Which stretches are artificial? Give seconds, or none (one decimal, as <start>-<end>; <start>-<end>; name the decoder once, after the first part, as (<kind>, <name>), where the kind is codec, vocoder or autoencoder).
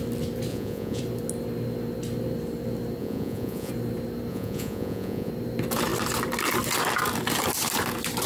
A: 0.5-1.0 (vocoder, Vocos); 3.0-3.7; 4.3-5.3